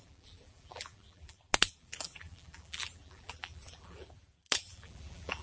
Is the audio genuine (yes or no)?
no